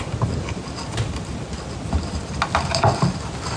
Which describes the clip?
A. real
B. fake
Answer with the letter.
A